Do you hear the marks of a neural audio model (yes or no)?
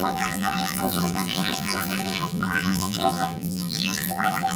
yes